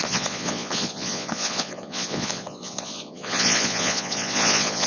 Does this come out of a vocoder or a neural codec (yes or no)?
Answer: yes